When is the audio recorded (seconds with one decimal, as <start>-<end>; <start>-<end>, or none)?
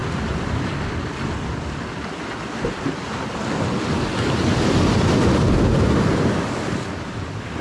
0.0-7.6